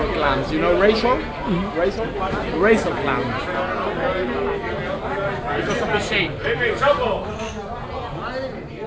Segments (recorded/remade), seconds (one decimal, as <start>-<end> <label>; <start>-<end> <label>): 0.0-8.9 recorded